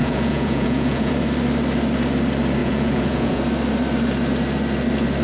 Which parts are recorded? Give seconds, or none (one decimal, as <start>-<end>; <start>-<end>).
1.1-2.6; 3.4-5.2